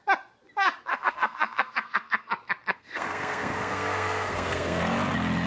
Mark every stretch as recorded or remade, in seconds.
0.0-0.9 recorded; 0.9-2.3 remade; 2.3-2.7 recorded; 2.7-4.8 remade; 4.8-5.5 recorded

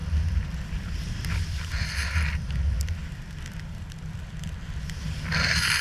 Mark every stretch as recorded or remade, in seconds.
0.0-5.8 recorded

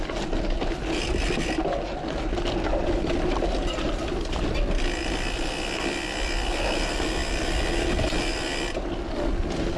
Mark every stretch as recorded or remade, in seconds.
0.0-9.8 recorded

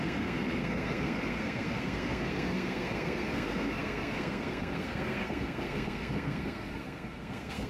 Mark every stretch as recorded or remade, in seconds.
0.0-7.7 remade

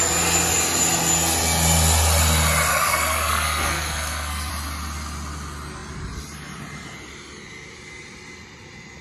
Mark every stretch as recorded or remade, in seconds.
0.0-2.7 recorded; 2.7-4.5 remade; 4.5-9.0 recorded

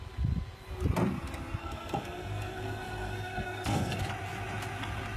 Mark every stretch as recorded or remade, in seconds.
0.0-1.6 recorded; 1.6-4.0 remade; 4.0-5.2 recorded